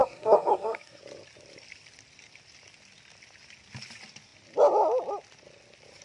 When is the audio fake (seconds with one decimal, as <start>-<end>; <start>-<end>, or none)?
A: 0.0-1.0